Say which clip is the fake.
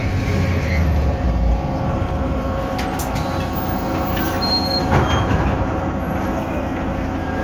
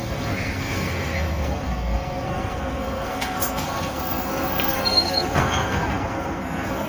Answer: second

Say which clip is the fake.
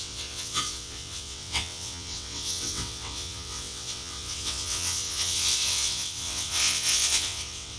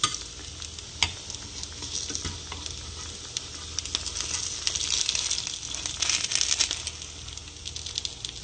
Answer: first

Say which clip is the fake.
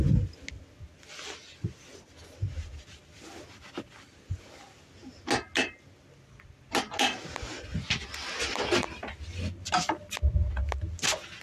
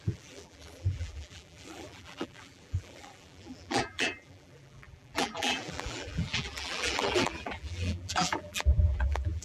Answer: second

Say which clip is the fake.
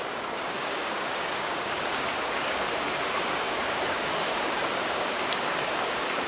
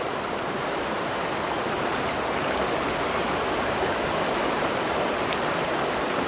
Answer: first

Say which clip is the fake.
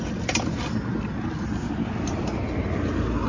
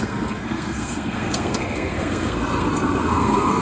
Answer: second